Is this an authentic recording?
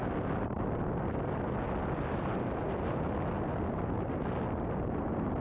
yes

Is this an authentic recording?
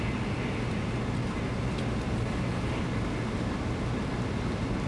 yes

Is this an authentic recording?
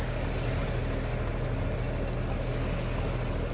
yes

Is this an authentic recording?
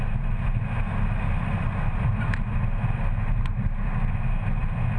yes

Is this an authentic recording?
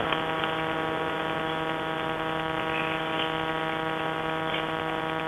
yes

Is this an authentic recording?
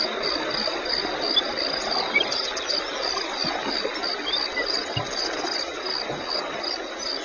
yes